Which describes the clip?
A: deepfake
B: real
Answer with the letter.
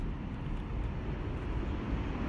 B